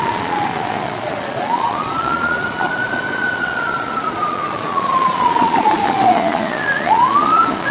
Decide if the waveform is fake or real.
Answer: fake